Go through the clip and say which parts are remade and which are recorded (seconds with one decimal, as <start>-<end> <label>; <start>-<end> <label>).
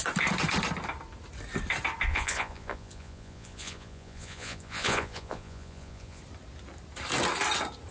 0.0-2.1 recorded; 2.1-6.2 remade; 6.2-7.9 recorded